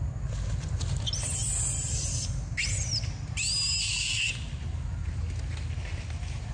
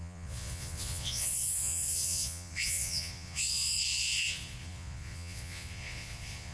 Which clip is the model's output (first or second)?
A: second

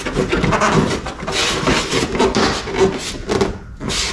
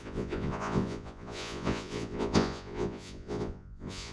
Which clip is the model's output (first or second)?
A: second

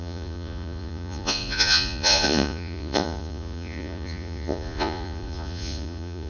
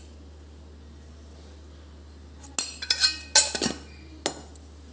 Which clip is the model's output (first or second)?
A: first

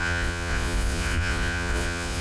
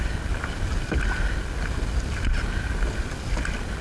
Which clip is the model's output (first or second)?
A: first